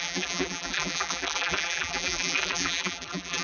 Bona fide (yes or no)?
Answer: no